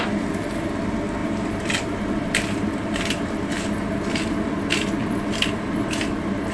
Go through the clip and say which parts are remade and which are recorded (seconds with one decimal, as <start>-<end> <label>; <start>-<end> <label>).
0.0-1.2 recorded; 1.2-3.4 remade; 3.4-5.0 recorded; 5.0-5.9 remade; 5.9-6.5 recorded